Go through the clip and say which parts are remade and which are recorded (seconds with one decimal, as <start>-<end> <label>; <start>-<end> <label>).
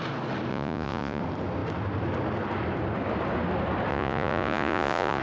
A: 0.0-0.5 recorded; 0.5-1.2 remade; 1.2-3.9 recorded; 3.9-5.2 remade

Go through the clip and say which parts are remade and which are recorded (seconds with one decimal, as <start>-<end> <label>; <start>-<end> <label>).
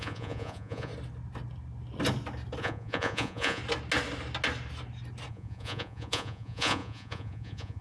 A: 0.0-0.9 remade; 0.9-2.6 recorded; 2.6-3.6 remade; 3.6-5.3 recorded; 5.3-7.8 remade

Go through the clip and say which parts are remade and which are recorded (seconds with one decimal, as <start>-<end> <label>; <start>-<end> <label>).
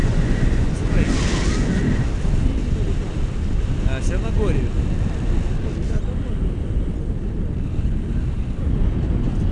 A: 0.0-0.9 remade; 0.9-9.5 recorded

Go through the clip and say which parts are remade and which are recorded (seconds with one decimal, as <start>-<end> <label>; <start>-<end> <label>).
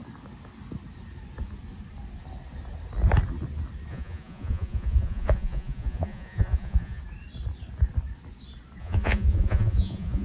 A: 0.0-3.9 recorded; 3.9-7.0 remade; 7.0-8.8 recorded; 8.8-10.2 remade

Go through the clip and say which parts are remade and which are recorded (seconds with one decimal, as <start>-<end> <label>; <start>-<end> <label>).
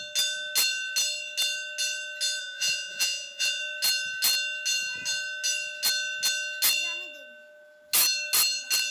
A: 0.0-2.4 recorded; 2.4-3.6 remade; 3.6-8.9 recorded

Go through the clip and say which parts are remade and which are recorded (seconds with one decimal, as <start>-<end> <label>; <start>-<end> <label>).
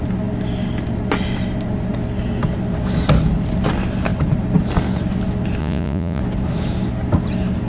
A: 0.0-5.6 recorded; 5.6-6.2 remade; 6.2-7.7 recorded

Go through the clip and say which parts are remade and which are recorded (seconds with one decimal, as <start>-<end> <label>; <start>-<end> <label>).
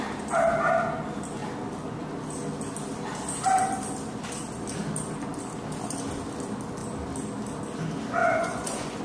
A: 0.0-8.2 recorded; 8.2-9.0 remade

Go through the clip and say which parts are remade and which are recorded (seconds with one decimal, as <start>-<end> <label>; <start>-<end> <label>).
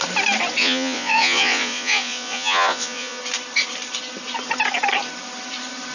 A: 0.0-0.6 recorded; 0.6-3.2 remade; 3.2-5.9 recorded